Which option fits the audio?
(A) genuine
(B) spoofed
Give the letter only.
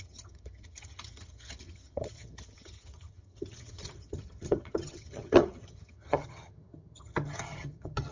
B